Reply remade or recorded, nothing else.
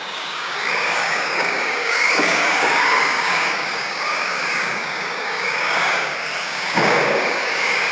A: remade